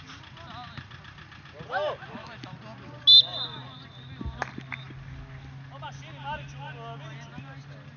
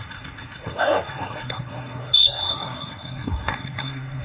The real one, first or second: first